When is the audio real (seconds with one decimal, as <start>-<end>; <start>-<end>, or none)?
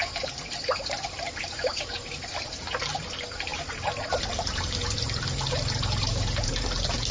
3.0-3.5